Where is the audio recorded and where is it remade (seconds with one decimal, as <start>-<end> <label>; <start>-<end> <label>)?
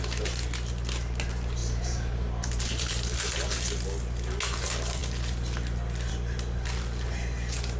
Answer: 0.0-1.6 recorded; 1.6-3.2 remade; 3.2-7.8 recorded